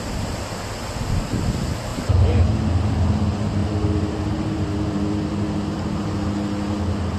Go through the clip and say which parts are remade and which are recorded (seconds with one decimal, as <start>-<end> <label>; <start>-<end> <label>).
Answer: 0.0-7.2 recorded